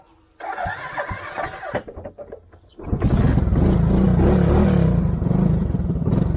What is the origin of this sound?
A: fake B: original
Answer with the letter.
B